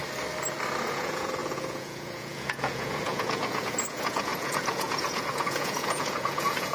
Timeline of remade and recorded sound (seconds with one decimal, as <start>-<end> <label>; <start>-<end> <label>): 0.0-0.9 recorded; 0.9-6.7 remade